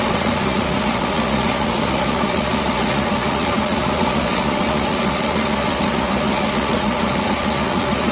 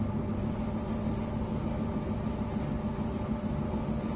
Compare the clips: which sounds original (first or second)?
second